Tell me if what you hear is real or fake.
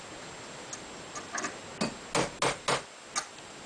real